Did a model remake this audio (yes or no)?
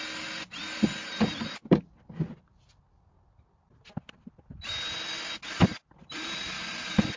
no